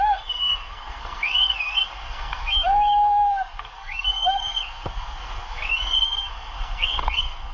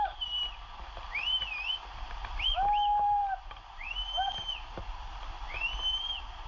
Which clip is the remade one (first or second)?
first